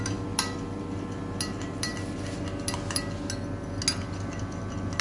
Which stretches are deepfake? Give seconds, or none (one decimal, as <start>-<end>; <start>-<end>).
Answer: none